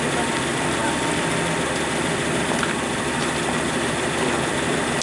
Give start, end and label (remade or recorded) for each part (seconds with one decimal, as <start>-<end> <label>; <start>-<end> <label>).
0.0-5.0 recorded